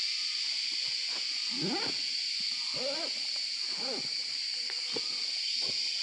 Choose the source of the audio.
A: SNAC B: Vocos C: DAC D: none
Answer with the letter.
D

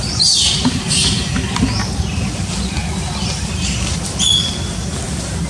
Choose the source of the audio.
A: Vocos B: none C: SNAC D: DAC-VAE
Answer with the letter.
B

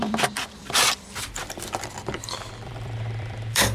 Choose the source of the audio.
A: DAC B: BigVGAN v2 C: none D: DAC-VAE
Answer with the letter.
B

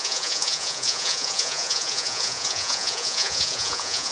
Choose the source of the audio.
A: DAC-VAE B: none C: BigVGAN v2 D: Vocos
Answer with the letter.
D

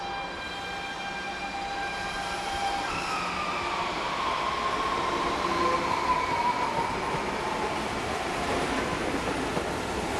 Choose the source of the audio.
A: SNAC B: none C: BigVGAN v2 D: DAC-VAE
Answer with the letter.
B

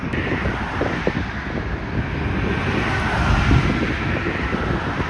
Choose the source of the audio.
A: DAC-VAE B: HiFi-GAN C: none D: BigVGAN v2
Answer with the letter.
C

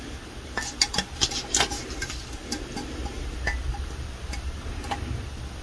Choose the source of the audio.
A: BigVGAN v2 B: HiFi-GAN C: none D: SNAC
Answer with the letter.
C